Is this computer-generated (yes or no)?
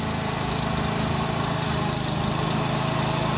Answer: no